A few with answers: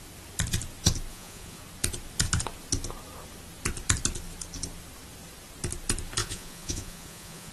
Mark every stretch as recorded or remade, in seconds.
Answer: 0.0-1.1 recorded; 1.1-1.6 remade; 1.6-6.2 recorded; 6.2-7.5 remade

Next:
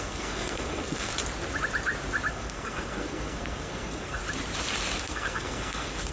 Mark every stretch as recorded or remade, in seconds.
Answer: 0.0-1.1 remade; 1.1-2.3 recorded; 2.3-4.2 remade; 4.2-5.0 recorded; 5.0-6.1 remade

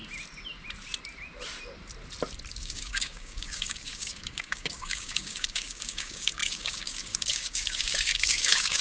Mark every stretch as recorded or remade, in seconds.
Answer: 0.0-2.5 recorded; 2.5-8.8 remade

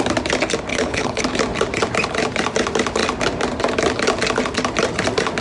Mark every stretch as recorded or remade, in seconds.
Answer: 0.0-0.7 recorded; 0.7-1.2 remade; 1.2-5.4 recorded

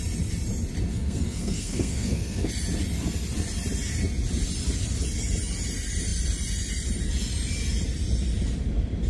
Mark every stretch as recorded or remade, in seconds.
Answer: 0.0-0.9 recorded; 0.9-2.5 remade; 2.5-9.1 recorded

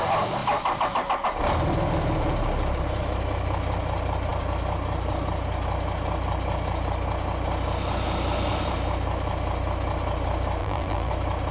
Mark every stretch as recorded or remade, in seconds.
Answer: 0.0-10.6 recorded; 10.6-11.1 remade; 11.1-11.5 recorded

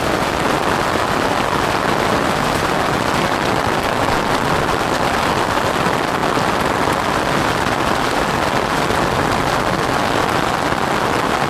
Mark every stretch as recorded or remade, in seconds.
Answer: 0.0-11.5 recorded